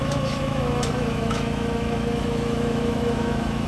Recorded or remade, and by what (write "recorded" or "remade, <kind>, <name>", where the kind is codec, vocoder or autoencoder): remade, autoencoder, DAC-VAE